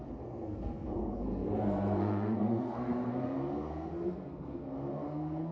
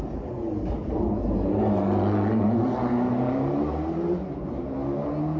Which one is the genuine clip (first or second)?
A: second